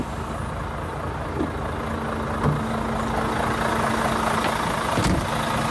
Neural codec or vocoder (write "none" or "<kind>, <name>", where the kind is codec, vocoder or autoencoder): none